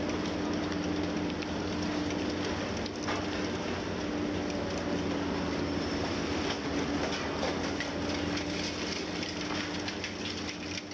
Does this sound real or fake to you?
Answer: real